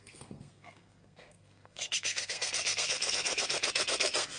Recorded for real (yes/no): no